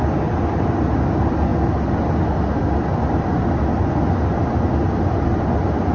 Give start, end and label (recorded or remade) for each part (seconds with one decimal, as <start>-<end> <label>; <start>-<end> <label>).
0.0-5.9 recorded